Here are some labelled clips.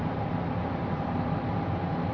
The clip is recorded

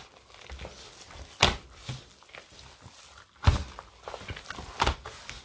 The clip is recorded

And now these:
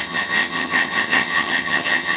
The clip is remade